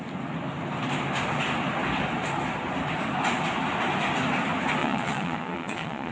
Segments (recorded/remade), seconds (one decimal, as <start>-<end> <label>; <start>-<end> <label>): 0.0-4.8 recorded; 4.8-6.1 remade